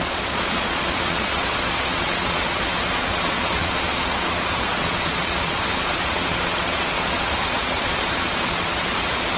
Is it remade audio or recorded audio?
remade